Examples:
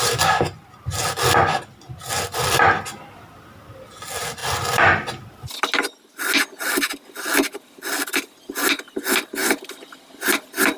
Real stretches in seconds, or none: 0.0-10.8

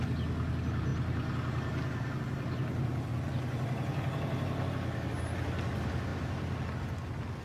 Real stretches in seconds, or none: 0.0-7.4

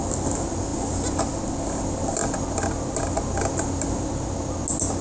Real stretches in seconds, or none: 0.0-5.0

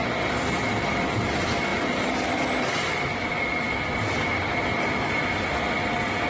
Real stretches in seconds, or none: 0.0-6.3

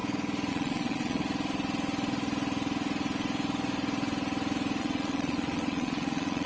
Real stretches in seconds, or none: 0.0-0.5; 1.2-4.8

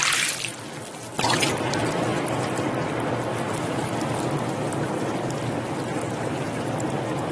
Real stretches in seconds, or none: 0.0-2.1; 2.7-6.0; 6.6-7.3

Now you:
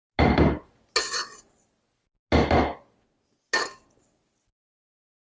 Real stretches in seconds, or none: 0.0-5.3